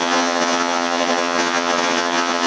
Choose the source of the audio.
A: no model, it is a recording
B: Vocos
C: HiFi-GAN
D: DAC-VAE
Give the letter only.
C